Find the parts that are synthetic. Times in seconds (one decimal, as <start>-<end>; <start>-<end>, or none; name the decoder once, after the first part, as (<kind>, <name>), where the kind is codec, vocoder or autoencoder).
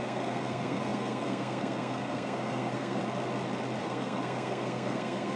0.0-3.0 (codec, SNAC); 3.8-5.4